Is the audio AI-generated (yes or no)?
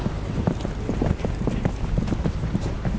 no